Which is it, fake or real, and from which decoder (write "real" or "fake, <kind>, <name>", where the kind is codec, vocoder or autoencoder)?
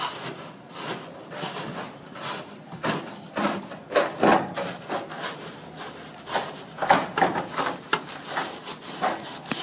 real